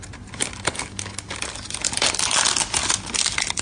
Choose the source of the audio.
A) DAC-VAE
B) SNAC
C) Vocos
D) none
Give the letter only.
D